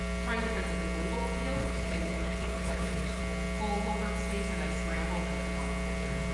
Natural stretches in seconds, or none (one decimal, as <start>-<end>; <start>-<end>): 0.0-1.6; 3.2-6.3